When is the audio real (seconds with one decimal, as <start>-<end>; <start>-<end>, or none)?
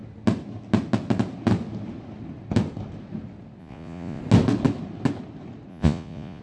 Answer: 0.0-3.6; 4.2-5.7